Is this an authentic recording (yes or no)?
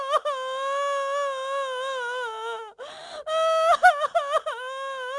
yes